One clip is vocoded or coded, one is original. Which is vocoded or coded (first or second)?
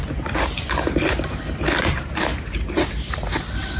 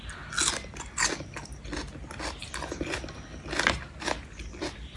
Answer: first